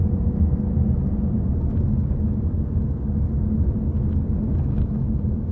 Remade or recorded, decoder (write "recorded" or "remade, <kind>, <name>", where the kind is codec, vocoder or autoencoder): recorded